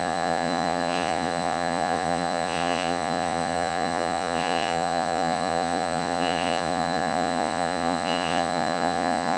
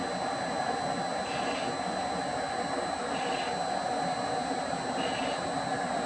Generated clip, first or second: first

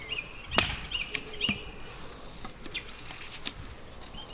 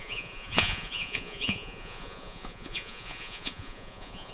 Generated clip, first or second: second